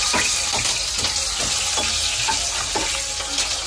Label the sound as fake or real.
real